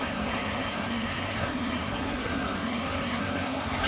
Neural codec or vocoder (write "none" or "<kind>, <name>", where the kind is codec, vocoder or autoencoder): codec, SNAC